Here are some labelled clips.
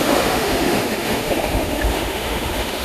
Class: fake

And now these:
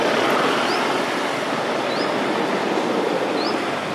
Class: real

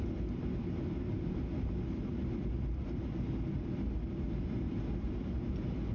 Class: real